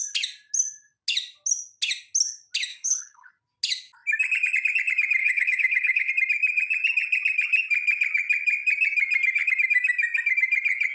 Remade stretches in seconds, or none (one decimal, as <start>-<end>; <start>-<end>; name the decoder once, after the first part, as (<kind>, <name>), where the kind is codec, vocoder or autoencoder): 2.7-3.3 (codec, HILCodec); 5.2-6.1